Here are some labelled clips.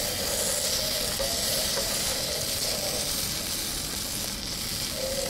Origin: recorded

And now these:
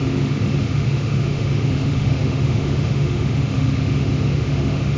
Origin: remade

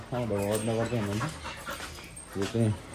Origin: recorded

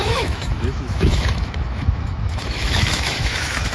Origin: remade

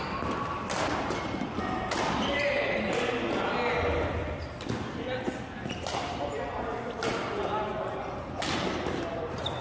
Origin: recorded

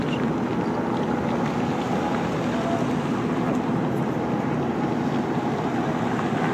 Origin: recorded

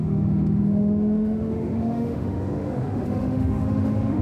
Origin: remade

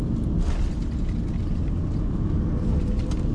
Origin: recorded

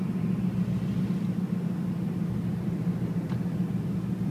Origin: recorded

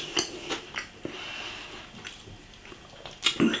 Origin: recorded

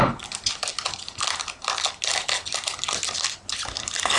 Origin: recorded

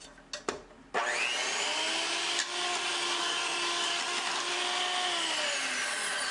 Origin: recorded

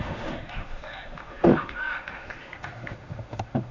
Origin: remade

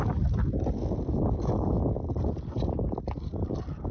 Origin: recorded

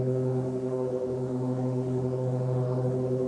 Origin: remade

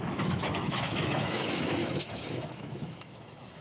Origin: remade